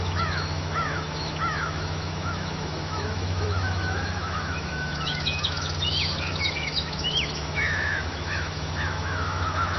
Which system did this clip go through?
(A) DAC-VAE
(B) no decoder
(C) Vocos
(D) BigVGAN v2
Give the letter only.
A